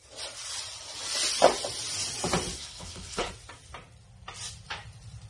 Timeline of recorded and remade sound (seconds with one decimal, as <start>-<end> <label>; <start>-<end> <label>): 0.0-2.6 recorded; 2.6-3.3 remade; 3.3-5.3 recorded